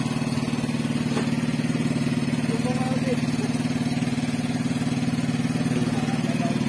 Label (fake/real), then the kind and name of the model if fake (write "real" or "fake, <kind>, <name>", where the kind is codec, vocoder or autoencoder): real